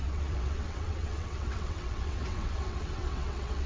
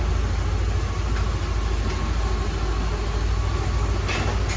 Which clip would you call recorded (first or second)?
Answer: second